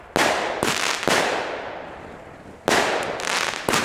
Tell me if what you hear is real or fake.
real